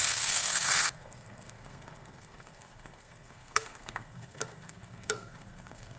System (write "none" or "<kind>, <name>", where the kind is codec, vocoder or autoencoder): codec, SNAC